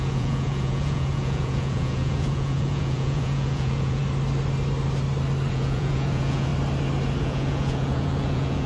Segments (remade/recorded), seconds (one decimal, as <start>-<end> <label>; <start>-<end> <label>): 0.0-4.0 remade; 4.0-5.5 recorded; 5.5-6.5 remade; 6.5-7.2 recorded; 7.2-8.7 remade